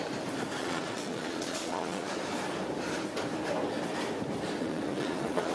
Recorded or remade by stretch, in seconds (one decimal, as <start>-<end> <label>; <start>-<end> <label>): 0.0-0.6 recorded; 0.6-2.1 remade; 2.1-4.6 recorded; 4.6-5.5 remade